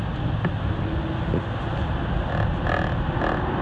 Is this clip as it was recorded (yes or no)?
yes